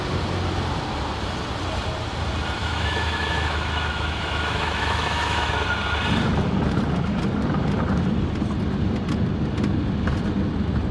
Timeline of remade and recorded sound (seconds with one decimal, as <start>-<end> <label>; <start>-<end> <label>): 0.0-2.6 recorded; 2.6-5.5 remade; 5.5-10.9 recorded